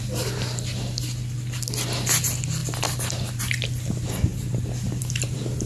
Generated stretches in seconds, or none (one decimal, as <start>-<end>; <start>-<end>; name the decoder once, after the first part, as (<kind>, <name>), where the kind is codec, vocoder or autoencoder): none